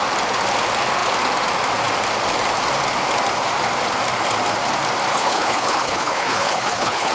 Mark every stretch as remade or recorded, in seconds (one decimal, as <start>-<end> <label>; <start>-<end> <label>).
0.0-5.1 recorded; 5.1-7.1 remade